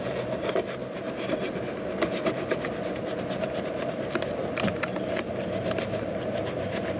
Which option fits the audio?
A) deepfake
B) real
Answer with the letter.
A